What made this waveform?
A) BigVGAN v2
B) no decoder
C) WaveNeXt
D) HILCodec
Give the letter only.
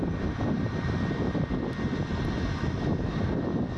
B